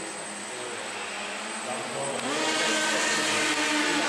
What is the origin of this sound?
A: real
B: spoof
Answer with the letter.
A